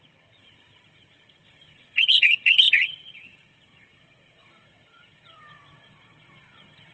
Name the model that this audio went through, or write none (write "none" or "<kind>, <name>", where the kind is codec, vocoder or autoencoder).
vocoder, HiFi-GAN